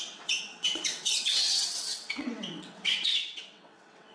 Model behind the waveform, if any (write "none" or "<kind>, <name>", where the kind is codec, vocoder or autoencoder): vocoder, WaveNeXt